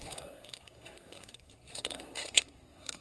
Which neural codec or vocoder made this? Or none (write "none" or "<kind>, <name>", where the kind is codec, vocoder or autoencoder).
codec, SNAC